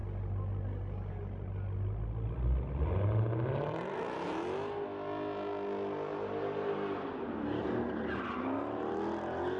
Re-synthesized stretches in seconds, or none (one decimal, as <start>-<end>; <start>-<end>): none